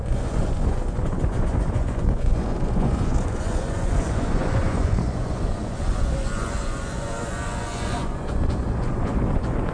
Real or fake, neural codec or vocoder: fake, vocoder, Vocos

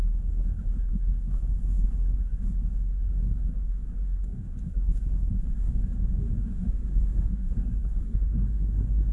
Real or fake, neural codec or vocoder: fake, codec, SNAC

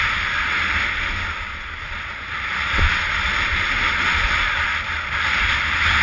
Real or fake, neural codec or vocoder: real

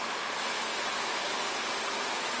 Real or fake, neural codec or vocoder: real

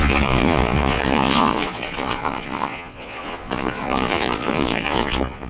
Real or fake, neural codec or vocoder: fake, vocoder, Vocos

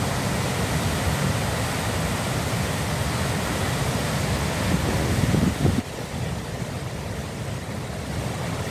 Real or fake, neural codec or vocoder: real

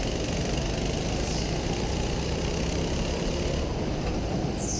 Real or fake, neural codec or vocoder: real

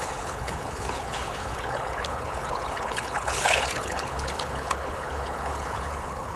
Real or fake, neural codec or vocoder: fake, codec, HILCodec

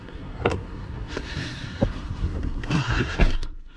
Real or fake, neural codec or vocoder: fake, codec, SNAC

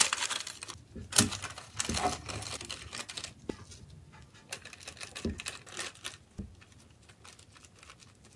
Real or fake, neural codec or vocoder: real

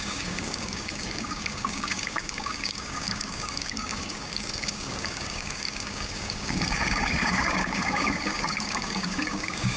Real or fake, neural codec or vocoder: fake, codec, DAC